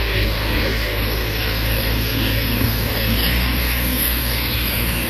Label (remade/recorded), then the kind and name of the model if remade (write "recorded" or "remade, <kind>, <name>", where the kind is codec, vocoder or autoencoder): remade, codec, DAC